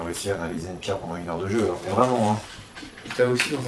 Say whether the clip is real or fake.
fake